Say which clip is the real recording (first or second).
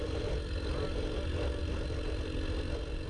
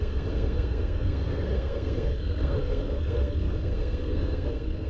first